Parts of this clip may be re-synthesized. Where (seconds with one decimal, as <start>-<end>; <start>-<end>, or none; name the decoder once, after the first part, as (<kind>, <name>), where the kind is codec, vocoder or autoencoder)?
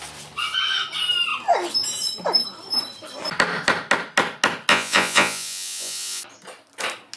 4.7-6.2 (vocoder, Vocos)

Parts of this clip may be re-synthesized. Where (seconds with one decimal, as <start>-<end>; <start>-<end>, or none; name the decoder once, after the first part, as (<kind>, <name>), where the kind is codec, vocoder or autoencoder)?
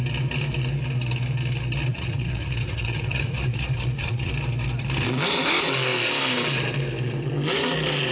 1.9-4.3 (vocoder, Vocos)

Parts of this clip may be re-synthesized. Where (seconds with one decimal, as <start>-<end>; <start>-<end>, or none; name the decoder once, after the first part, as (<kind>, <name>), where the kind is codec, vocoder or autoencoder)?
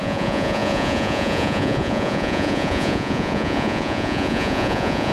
0.0-5.1 (vocoder, Vocos)